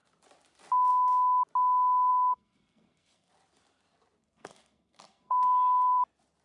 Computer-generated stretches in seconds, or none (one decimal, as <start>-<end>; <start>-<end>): 2.1-3.3; 4.2-6.0